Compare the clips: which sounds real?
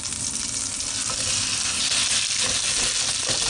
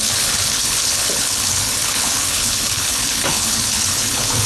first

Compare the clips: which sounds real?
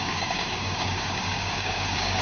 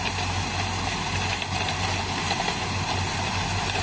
second